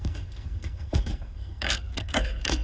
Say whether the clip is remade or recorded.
remade